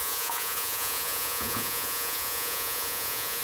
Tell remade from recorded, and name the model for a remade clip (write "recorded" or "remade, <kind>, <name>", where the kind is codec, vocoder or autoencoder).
remade, vocoder, Vocos